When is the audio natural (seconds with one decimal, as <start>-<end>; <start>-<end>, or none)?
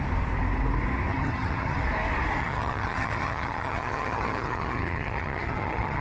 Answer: 0.0-1.1; 1.8-2.4